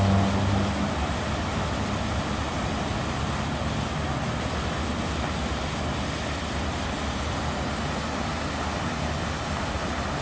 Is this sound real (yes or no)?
yes